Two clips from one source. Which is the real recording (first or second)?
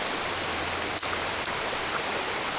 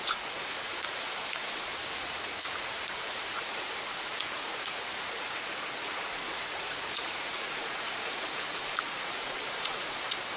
first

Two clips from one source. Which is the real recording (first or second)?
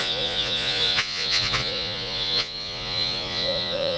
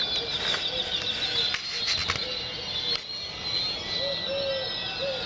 second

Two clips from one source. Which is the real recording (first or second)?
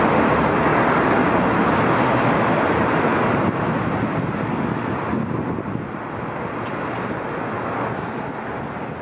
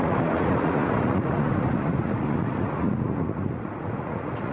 first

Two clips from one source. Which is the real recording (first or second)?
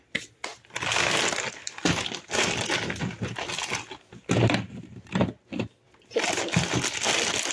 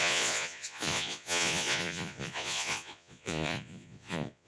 first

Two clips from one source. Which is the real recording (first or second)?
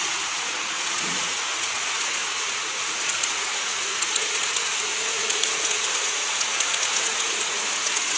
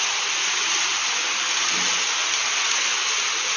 second